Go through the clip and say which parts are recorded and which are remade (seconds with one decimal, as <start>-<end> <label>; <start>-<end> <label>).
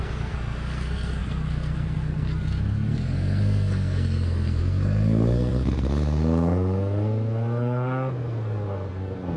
0.0-9.4 remade